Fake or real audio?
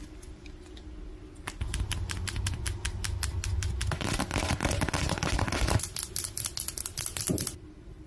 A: real